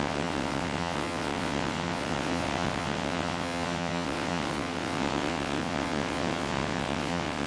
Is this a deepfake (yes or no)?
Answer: yes